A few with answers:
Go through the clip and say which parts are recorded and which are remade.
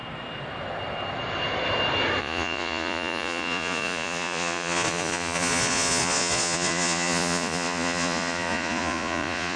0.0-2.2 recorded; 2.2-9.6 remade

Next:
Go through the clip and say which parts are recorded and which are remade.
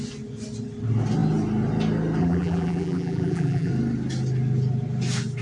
0.0-2.2 recorded; 2.2-3.7 remade; 3.7-5.4 recorded